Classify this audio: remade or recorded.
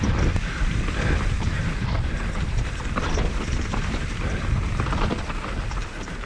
remade